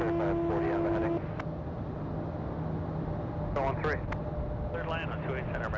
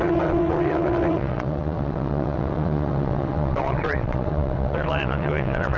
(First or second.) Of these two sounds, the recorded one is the first